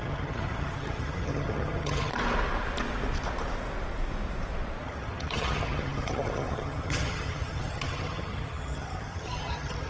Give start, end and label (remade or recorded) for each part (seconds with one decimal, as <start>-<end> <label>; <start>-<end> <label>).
0.0-2.1 remade; 2.1-4.8 recorded; 4.8-9.9 remade